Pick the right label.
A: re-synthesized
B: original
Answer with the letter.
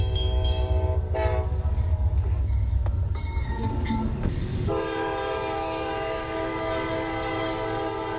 A